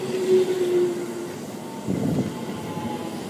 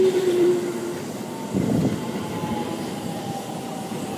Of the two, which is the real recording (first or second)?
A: first